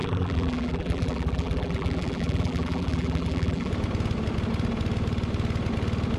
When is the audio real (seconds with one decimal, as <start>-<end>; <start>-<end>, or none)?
3.7-6.2